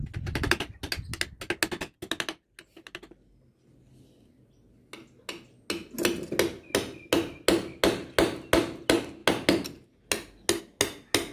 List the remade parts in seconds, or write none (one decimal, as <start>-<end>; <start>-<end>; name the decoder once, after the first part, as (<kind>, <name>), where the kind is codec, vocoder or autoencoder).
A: none